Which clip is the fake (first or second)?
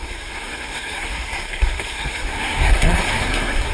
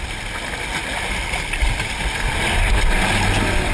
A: first